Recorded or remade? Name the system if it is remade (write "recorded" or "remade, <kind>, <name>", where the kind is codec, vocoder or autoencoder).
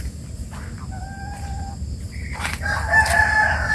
remade, vocoder, BigVGAN v2